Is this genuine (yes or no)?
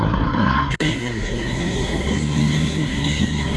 no